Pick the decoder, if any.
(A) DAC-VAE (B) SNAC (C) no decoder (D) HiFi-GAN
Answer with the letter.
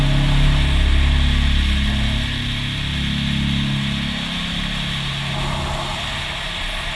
C